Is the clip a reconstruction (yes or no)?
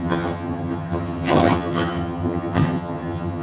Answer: yes